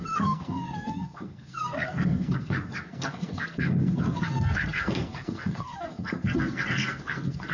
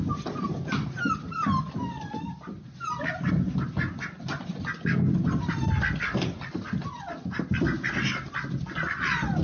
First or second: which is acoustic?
second